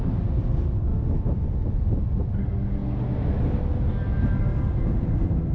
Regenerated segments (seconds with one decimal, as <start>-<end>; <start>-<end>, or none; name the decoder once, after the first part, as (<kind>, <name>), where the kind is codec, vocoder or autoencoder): none